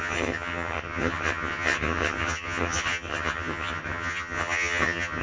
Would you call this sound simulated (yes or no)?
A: yes